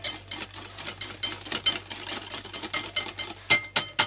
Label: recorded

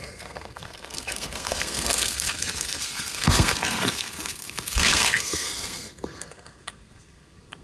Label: remade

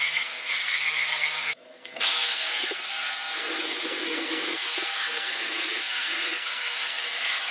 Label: remade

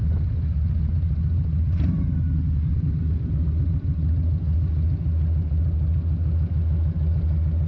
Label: recorded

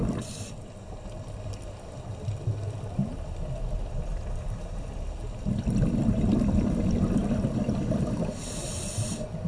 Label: recorded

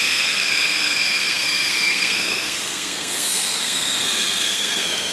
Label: remade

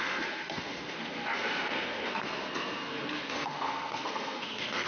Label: remade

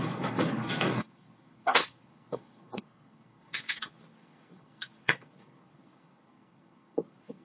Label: remade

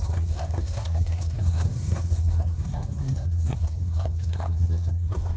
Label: remade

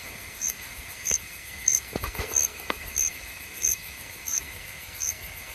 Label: remade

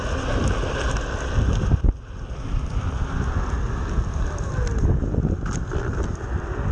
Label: recorded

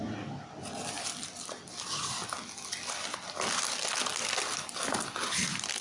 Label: recorded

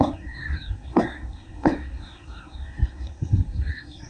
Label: remade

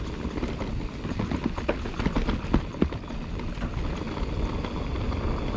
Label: recorded